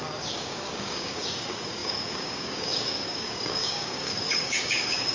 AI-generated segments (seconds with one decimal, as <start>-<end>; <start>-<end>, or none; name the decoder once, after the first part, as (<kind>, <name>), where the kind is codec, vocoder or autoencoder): 0.0-5.1 (codec, DAC)